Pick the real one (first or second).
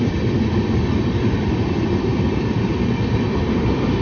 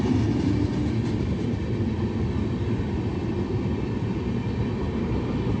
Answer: second